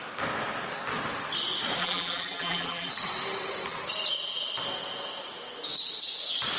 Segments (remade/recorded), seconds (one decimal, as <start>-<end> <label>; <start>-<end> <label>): 0.0-1.8 recorded; 1.8-2.9 remade; 2.9-6.6 recorded

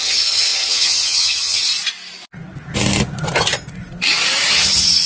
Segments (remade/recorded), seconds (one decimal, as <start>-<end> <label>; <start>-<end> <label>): 0.0-1.7 remade; 1.7-4.5 recorded; 4.5-5.1 remade

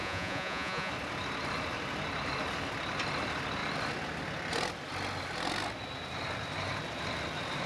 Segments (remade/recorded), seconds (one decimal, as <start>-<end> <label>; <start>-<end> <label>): 0.0-0.9 remade; 0.9-7.7 recorded

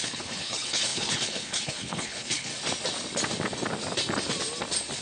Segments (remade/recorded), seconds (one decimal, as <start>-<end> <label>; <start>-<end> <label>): 0.0-2.5 remade; 2.5-5.0 recorded

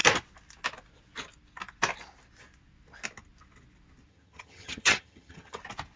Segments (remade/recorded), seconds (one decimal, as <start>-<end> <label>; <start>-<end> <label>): 0.0-4.1 recorded; 4.1-5.6 remade; 5.6-6.0 recorded

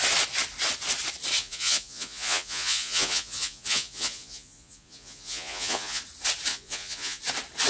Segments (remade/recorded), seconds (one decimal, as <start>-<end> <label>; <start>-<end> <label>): 0.0-1.4 recorded; 1.4-6.0 remade; 6.0-6.5 recorded; 6.5-7.2 remade; 7.2-7.7 recorded

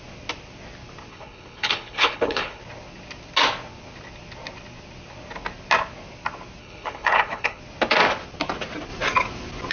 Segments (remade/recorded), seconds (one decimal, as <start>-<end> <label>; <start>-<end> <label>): 0.0-1.1 recorded; 1.1-2.6 remade; 2.6-6.6 recorded; 6.6-7.6 remade; 7.6-9.7 recorded

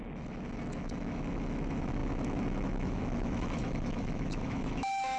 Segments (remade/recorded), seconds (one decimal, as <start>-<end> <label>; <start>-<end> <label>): 0.0-5.2 remade